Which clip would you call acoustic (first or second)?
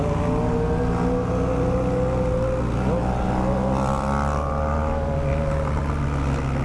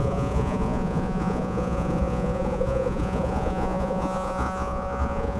first